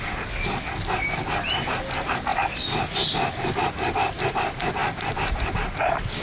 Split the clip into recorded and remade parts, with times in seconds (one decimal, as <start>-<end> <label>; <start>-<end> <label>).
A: 0.0-6.2 recorded